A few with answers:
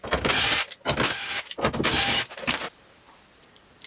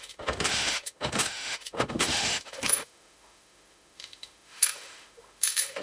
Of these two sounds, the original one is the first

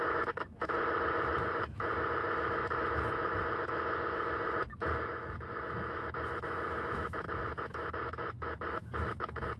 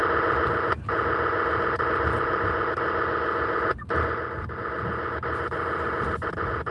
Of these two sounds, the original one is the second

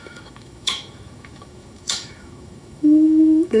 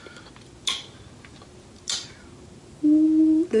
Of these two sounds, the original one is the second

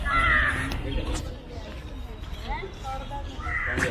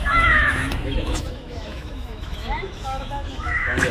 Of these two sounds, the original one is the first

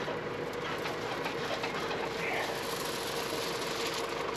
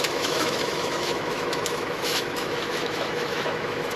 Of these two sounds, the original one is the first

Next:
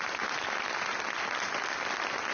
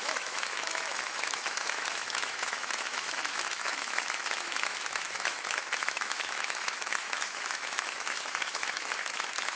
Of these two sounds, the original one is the first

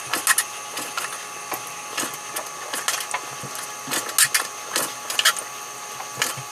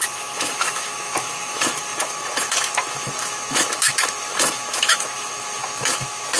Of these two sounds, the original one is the first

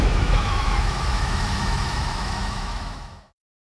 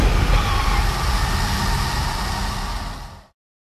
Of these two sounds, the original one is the second